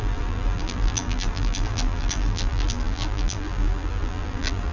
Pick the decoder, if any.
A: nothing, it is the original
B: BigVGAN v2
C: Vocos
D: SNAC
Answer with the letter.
B